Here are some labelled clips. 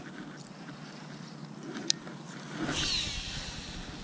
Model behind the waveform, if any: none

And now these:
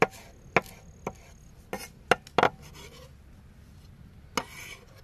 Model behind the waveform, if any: none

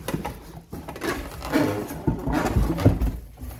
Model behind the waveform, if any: none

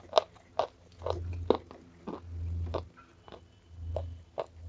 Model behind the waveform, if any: none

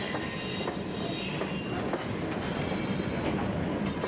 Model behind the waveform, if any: none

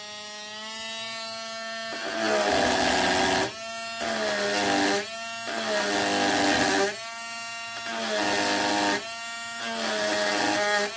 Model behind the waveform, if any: none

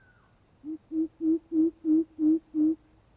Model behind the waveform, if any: none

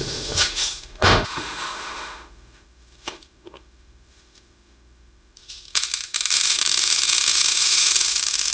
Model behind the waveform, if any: autoencoder, DAC-VAE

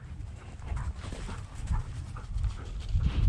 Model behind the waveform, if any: none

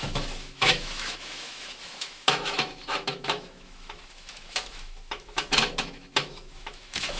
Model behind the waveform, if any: autoencoder, DAC-VAE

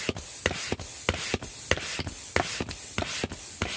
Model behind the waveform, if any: none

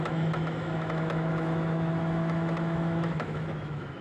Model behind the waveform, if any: autoencoder, DAC-VAE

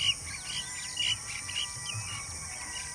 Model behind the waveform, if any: none